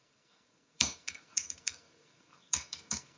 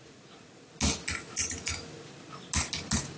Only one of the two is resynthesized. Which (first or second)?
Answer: first